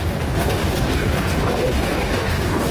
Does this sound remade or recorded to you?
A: remade